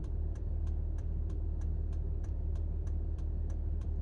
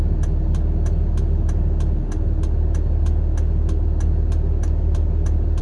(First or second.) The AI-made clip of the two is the first